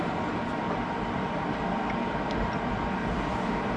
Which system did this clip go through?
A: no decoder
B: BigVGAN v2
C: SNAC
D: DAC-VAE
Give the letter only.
B